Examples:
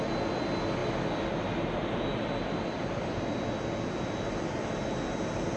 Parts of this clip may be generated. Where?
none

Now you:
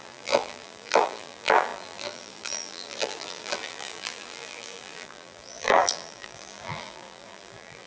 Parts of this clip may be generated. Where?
0.0-7.9 (vocoder, BigVGAN v2)

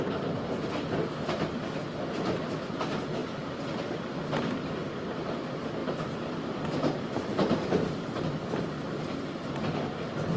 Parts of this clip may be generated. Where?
5.8-8.2 (vocoder, BigVGAN v2)

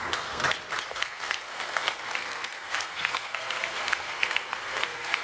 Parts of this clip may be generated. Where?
0.0-0.4 (codec, SNAC); 0.9-5.2

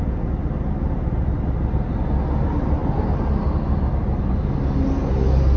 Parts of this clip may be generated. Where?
none